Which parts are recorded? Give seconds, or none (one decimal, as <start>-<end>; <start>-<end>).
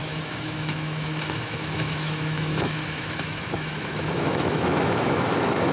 none